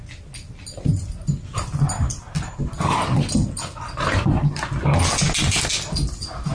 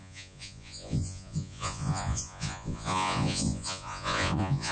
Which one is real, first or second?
first